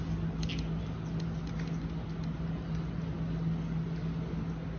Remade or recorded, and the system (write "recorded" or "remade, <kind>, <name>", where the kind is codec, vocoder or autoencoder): recorded